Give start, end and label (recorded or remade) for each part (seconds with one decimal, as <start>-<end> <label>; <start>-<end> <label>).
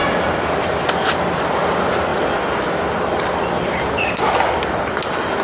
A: 0.0-5.4 recorded